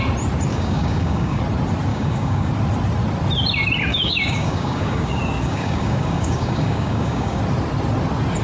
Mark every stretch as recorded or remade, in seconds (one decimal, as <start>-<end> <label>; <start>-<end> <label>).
0.0-0.5 recorded; 0.5-1.4 remade; 1.4-1.9 recorded; 1.9-2.5 remade; 2.5-3.9 recorded; 3.9-7.4 remade; 7.4-8.4 recorded